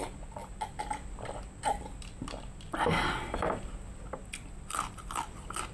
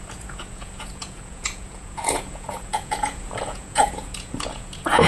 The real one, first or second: first